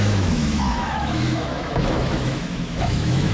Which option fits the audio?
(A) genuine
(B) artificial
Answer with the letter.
B